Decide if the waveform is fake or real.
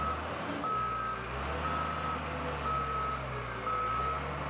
real